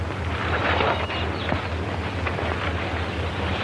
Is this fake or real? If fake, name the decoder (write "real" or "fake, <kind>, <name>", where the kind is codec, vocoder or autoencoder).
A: real